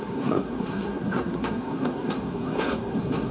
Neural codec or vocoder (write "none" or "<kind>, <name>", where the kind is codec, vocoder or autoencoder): codec, SNAC